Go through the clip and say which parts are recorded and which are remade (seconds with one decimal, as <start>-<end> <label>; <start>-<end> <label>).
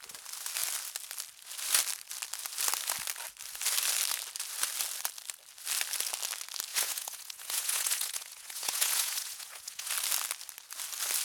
0.0-6.7 recorded; 6.7-9.9 remade; 9.9-11.2 recorded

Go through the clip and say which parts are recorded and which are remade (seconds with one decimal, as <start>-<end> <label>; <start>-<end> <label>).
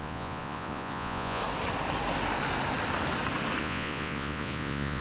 0.0-1.4 remade; 1.4-3.6 recorded; 3.6-5.0 remade